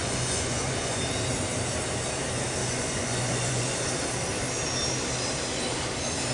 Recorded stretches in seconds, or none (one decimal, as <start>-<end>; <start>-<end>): 1.0-2.6; 3.8-6.3

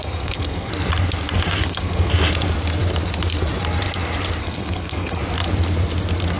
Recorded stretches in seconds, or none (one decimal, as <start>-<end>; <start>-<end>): 0.7-1.6; 2.1-4.4; 5.2-6.4